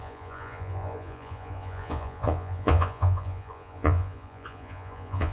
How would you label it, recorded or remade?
remade